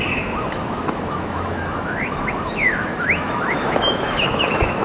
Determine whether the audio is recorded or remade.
remade